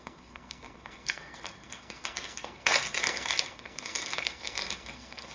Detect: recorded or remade remade